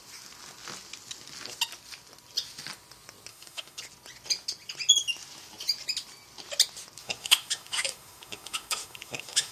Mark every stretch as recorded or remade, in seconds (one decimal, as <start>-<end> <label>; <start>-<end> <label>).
0.0-3.3 recorded; 3.3-3.8 remade; 3.8-7.0 recorded; 7.0-9.5 remade